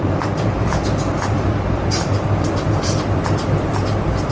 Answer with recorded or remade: remade